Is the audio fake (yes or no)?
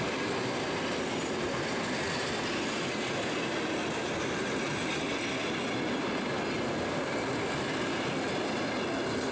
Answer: no